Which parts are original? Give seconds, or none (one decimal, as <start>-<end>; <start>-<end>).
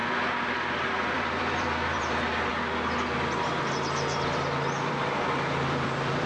0.0-0.7; 2.5-4.9